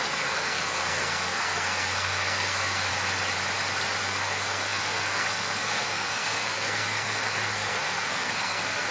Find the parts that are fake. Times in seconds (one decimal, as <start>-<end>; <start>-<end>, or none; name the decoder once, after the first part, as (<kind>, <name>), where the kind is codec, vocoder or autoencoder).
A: 0.0-2.9 (codec, SNAC); 4.0-8.9